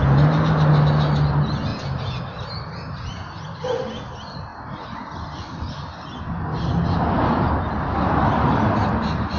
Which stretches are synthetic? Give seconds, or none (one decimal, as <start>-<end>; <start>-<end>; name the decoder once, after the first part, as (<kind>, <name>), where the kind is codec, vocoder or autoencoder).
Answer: 1.7-2.2 (vocoder, Vocos)